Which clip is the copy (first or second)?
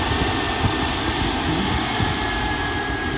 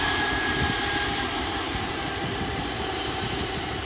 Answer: second